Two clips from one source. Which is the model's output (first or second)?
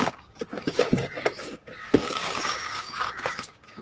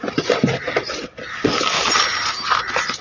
first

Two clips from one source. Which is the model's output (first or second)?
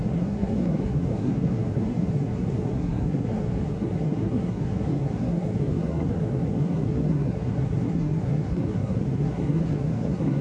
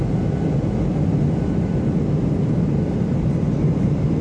first